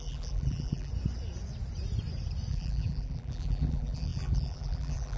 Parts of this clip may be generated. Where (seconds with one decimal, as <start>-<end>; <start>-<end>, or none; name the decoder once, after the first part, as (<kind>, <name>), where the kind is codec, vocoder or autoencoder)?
0.0-0.9 (vocoder, BigVGAN v2); 2.5-5.2